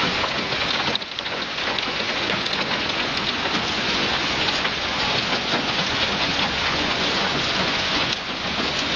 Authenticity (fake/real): fake